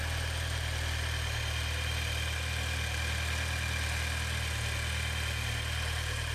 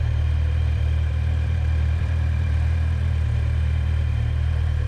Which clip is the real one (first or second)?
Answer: first